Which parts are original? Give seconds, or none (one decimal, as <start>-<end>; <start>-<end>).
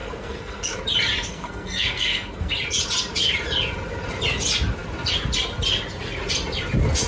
0.8-1.3; 2.5-7.1